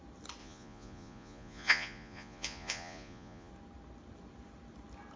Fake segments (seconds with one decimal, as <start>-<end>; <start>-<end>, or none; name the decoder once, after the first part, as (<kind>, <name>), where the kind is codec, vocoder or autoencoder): 0.4-3.5 (vocoder, Vocos)